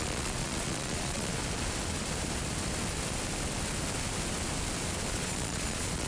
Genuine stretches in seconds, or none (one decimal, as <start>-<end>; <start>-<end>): 1.4-5.1

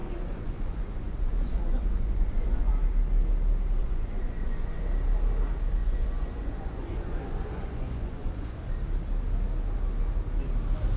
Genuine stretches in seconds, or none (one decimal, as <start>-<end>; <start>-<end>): 2.7-3.8; 4.8-5.8; 8.7-11.0

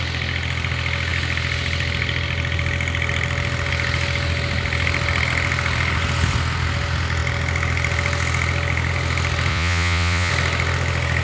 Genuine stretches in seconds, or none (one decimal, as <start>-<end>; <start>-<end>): 0.0-9.5; 10.3-11.2

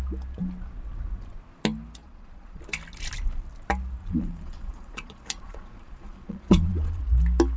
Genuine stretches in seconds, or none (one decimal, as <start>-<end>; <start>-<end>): 0.0-2.0; 2.6-4.0; 7.0-7.6